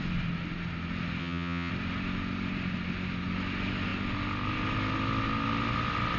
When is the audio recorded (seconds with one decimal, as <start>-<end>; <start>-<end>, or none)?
0.0-1.2; 1.7-6.2